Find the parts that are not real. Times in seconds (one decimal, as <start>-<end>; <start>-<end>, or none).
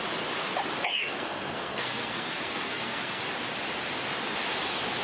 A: 0.9-3.2